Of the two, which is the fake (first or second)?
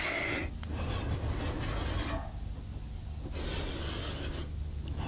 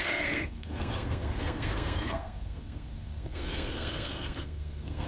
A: second